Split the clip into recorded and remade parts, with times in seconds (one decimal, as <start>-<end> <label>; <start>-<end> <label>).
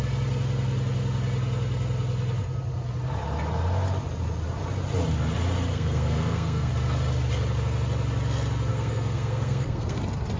0.0-5.7 recorded; 5.7-6.7 remade; 6.7-8.7 recorded; 8.7-10.0 remade; 10.0-10.4 recorded